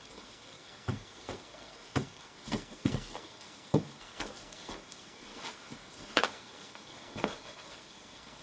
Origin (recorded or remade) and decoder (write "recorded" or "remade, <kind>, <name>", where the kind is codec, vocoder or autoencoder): remade, codec, SNAC